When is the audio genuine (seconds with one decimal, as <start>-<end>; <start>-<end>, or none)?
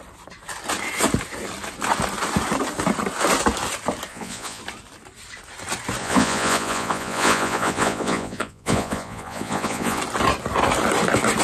0.0-4.1; 4.6-6.0; 10.0-11.4